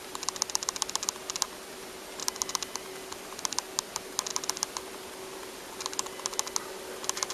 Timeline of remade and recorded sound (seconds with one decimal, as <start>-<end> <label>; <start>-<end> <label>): 0.0-7.3 recorded